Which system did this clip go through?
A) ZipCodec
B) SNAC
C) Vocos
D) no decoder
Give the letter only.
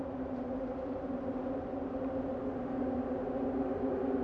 D